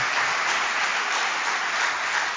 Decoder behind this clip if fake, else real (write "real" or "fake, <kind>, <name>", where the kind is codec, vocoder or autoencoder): real